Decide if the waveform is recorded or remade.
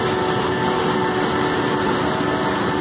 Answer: recorded